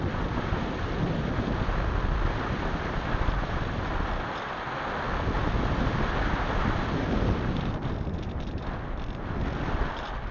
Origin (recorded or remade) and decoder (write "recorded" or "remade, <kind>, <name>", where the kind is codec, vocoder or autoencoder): recorded